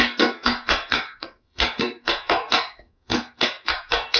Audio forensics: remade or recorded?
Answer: remade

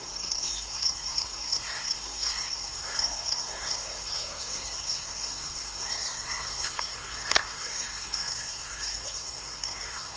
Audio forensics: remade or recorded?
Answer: remade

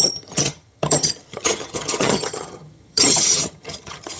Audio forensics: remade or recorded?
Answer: remade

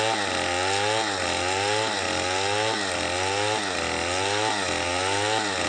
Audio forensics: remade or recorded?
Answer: recorded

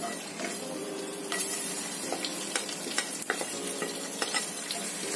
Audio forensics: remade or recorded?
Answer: remade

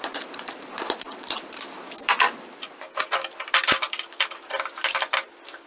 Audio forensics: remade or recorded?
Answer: recorded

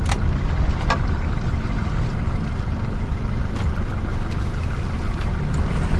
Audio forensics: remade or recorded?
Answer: remade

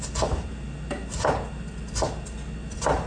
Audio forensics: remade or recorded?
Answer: recorded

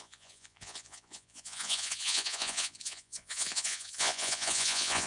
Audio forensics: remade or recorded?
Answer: remade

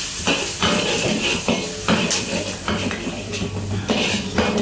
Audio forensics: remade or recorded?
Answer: recorded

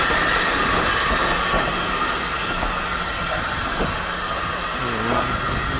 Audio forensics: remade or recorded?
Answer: recorded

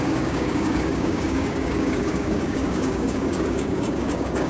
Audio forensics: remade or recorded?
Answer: remade